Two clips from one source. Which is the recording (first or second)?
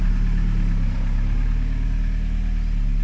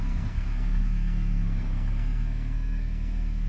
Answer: first